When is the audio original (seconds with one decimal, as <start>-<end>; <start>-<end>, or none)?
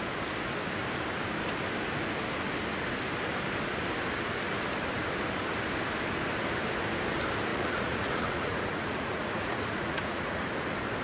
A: 0.0-7.5; 10.5-11.0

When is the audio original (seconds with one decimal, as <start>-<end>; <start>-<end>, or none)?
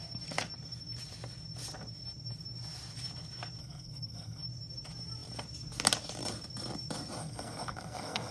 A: 0.0-3.6; 4.4-7.2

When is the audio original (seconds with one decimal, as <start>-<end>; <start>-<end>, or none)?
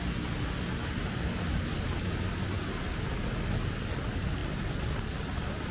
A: 0.0-5.7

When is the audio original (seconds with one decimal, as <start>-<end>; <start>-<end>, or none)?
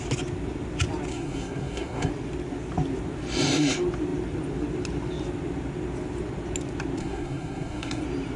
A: 0.0-1.1; 2.1-7.0; 8.0-8.4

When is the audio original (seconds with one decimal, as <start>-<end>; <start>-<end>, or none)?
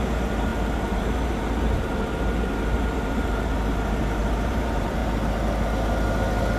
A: 5.0-6.6